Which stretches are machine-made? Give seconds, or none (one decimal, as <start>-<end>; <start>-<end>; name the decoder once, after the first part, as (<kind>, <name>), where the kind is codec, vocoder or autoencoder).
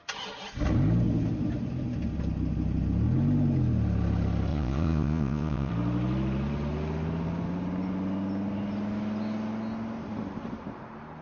4.5-5.7 (vocoder, Vocos)